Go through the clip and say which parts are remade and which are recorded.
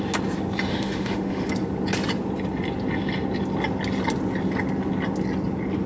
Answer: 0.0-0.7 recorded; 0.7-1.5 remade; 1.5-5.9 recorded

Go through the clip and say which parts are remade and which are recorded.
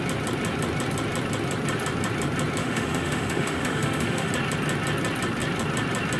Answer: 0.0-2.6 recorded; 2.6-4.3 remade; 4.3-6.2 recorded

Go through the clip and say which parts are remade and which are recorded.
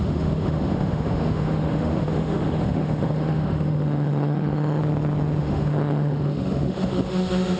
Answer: 0.0-4.8 remade; 4.8-5.4 recorded; 5.4-7.6 remade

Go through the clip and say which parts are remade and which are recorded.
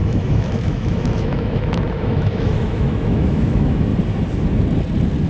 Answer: 0.0-3.9 remade; 3.9-5.3 recorded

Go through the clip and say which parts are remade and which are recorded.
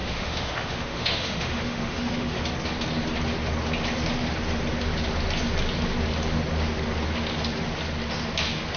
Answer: 0.0-2.4 remade; 2.4-8.8 recorded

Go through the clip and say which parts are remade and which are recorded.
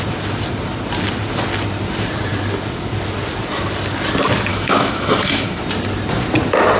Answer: 0.0-4.5 recorded; 4.5-5.6 remade; 5.6-6.8 recorded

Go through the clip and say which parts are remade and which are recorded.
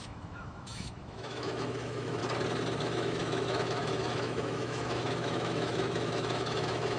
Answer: 0.0-2.2 remade; 2.2-2.8 recorded; 2.8-7.0 remade